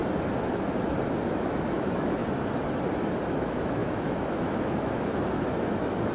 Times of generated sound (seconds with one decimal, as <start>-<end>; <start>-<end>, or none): 1.3-2.2; 3.3-6.1